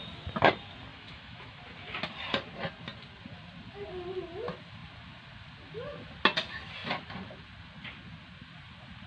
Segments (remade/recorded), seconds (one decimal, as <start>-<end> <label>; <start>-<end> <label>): 0.0-0.9 recorded; 0.9-1.6 remade; 1.6-9.1 recorded